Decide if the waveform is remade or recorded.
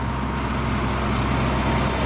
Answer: recorded